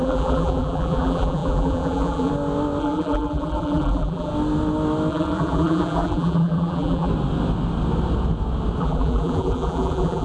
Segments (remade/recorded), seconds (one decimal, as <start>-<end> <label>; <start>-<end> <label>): 0.0-2.3 remade; 2.3-2.8 recorded; 2.8-4.3 remade; 4.3-5.1 recorded; 5.1-7.1 remade; 7.1-8.8 recorded; 8.8-10.2 remade